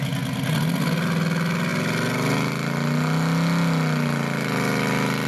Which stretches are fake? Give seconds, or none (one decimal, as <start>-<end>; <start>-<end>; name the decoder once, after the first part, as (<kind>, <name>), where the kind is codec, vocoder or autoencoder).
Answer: none